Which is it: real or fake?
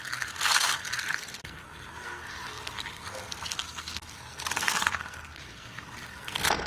fake